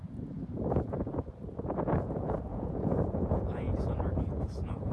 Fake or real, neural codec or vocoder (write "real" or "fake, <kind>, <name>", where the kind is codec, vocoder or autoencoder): fake, vocoder, Vocos